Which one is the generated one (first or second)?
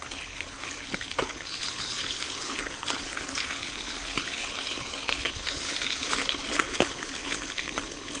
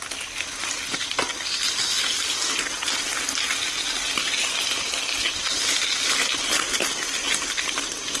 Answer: first